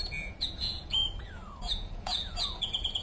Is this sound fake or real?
fake